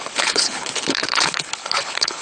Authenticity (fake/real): fake